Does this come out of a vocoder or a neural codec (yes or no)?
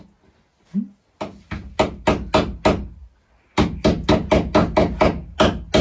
no